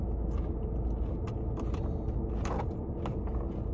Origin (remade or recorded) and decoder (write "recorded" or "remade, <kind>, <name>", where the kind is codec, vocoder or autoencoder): recorded